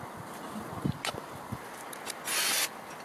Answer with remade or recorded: recorded